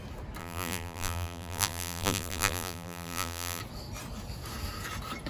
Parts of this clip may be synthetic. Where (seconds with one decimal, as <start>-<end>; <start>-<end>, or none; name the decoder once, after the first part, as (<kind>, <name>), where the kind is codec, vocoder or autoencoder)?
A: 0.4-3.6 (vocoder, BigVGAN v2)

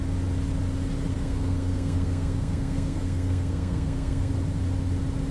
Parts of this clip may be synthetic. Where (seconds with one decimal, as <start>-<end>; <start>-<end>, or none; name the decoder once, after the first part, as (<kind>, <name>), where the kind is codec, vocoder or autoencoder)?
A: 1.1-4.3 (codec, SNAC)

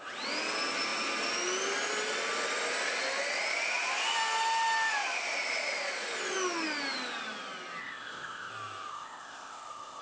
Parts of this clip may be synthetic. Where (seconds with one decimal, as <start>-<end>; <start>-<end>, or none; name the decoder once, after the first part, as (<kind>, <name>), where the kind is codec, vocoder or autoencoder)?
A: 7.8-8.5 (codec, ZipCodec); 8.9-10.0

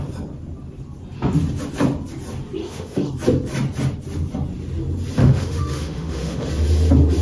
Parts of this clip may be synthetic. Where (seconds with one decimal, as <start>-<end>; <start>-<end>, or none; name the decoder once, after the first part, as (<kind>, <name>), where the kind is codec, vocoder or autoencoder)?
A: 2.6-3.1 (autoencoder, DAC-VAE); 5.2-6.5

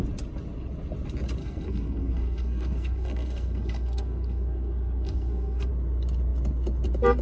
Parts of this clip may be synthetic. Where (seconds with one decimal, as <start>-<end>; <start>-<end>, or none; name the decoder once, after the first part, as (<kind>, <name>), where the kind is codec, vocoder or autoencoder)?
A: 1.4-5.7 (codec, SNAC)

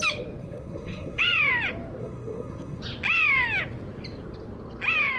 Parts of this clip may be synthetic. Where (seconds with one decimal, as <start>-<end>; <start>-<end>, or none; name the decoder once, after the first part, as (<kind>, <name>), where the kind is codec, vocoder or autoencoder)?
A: 0.4-1.2 (codec, SNAC); 2.0-2.8